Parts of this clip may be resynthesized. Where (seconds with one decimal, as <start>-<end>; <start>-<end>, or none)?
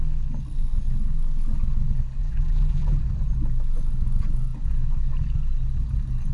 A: 2.2-3.0